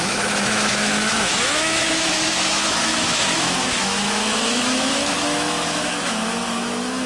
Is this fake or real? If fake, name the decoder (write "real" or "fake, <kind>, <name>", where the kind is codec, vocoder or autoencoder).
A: fake, autoencoder, DAC-VAE